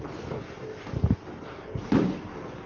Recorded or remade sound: recorded